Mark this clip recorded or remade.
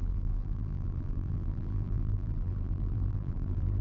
remade